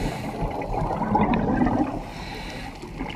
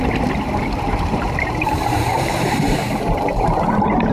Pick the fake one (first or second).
second